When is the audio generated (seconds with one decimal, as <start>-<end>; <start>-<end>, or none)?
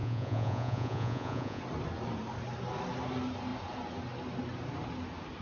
0.0-1.6